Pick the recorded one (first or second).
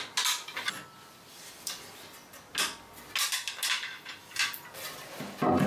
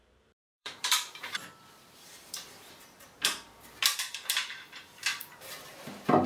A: first